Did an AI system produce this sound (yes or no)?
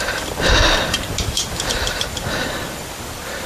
yes